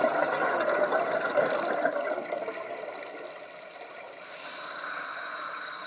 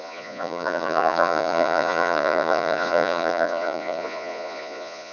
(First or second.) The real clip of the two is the first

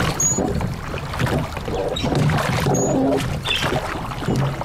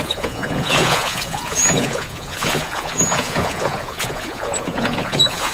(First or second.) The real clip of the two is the first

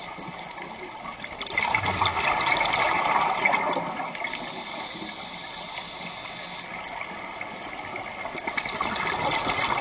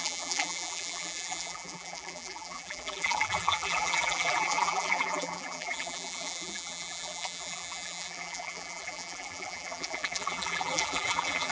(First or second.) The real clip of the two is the first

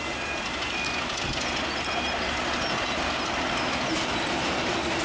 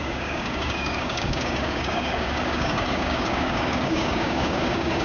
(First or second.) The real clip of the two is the first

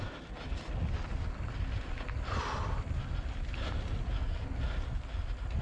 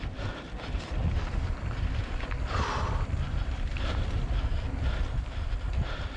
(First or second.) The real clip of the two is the first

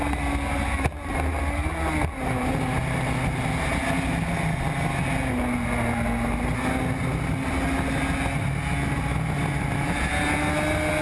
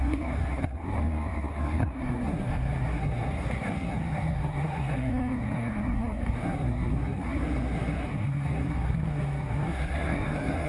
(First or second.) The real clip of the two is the first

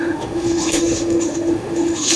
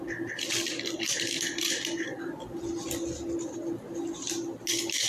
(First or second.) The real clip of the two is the second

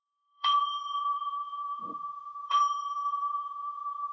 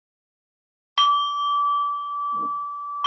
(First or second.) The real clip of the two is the second